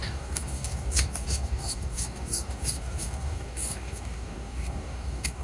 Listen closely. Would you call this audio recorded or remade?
remade